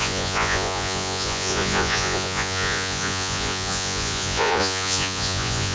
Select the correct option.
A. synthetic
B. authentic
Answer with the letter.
A